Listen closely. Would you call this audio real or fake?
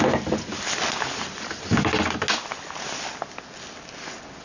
real